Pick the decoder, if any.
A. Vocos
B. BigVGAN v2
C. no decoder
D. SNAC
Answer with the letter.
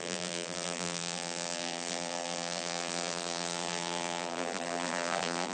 B